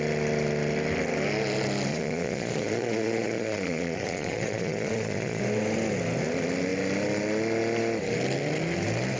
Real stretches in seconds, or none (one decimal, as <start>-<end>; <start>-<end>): 0.0-1.9; 5.4-9.2